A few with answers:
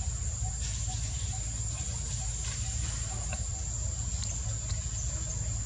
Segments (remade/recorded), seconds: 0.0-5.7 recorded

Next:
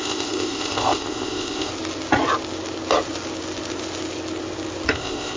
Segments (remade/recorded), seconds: 0.0-1.7 remade; 1.7-4.9 recorded; 4.9-5.4 remade

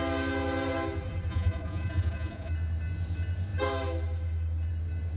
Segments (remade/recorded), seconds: 0.0-1.3 recorded; 1.3-2.5 remade; 2.5-5.2 recorded

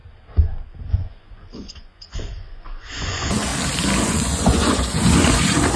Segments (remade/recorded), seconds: 0.0-0.9 recorded; 0.9-3.5 remade; 3.5-4.0 recorded; 4.0-5.8 remade

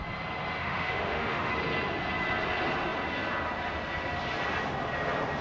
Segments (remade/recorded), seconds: 0.0-0.6 recorded; 0.6-1.5 remade; 1.5-5.4 recorded

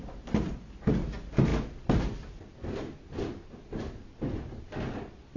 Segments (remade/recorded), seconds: 0.0-5.4 recorded

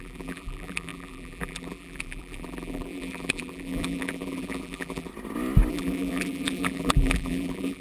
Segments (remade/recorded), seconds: 0.0-5.1 remade; 5.1-5.7 recorded; 5.7-7.8 remade

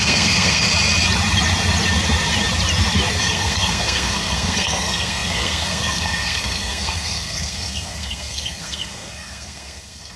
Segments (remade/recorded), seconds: 0.0-0.7 remade; 0.7-3.2 recorded; 3.2-10.2 remade